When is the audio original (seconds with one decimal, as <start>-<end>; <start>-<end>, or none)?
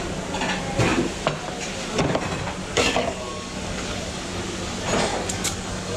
0.0-2.6; 4.4-5.1